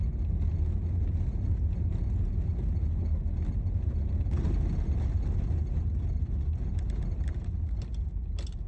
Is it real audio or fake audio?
real